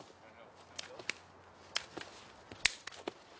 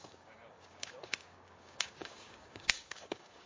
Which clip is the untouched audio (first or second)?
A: first